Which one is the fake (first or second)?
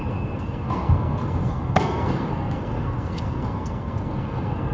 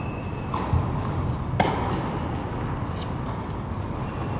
first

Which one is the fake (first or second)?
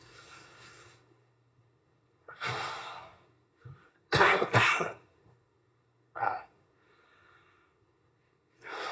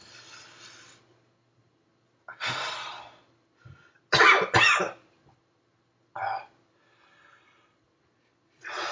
first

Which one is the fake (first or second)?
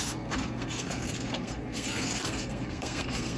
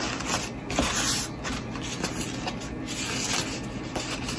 first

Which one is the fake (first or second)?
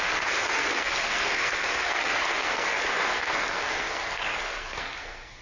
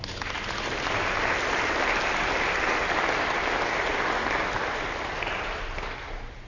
first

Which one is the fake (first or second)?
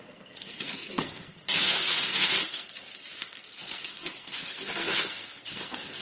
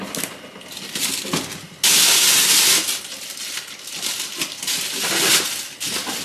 first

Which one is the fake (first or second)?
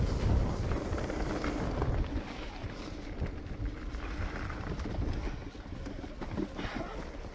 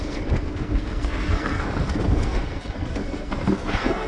second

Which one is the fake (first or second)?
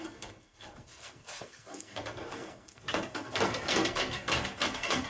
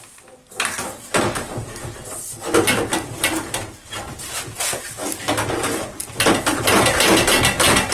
first